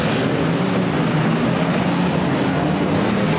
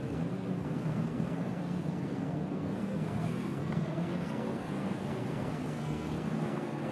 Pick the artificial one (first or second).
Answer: second